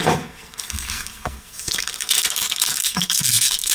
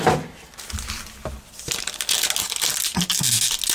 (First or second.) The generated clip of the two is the first